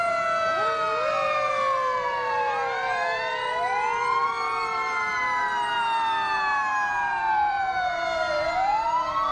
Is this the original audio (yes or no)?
no